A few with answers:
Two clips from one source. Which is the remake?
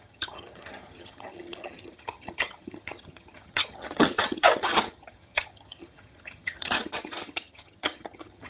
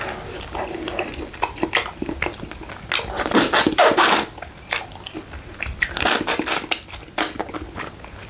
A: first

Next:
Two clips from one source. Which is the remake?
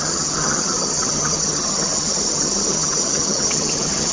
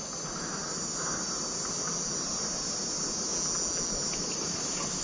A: first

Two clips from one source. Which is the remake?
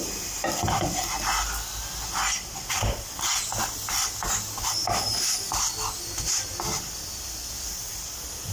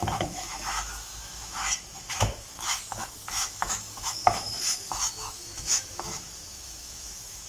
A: second